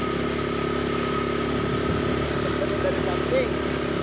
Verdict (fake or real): real